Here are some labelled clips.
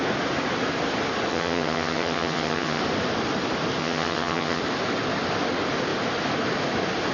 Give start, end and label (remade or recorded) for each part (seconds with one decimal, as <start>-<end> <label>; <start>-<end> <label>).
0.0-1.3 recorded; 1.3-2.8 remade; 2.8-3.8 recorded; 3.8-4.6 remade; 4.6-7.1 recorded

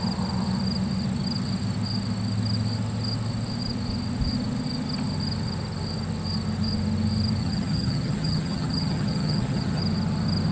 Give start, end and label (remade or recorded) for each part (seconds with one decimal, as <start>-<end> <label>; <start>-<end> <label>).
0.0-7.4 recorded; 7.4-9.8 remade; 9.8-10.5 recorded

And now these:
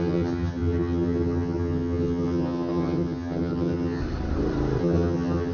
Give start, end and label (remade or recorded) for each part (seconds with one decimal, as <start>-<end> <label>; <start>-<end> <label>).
0.0-4.0 remade; 4.0-4.8 recorded; 4.8-5.5 remade

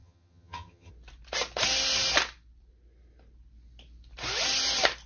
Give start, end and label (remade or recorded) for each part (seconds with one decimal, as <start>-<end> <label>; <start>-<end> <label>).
0.0-0.9 remade; 0.9-5.1 recorded

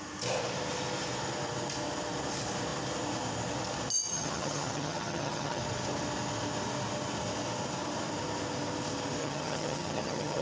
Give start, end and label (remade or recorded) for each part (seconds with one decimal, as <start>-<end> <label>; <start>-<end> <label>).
0.0-4.1 recorded; 4.1-5.6 remade; 5.6-9.2 recorded; 9.2-10.4 remade

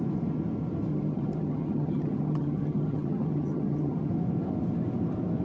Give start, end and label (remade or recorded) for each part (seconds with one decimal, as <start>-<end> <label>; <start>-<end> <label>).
0.0-0.9 recorded; 0.9-4.1 remade; 4.1-5.4 recorded

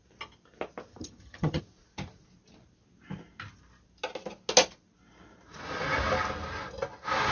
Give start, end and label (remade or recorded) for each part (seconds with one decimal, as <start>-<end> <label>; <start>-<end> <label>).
0.0-0.9 recorded; 0.9-1.6 remade; 1.6-7.3 recorded

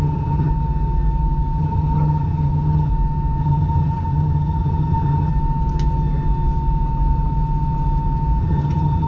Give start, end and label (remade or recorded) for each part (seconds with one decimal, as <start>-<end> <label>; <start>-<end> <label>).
0.0-0.5 remade; 0.5-1.6 recorded; 1.6-2.9 remade; 2.9-3.4 recorded; 3.4-5.3 remade; 5.3-8.4 recorded; 8.4-9.1 remade